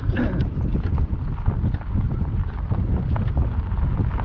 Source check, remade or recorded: recorded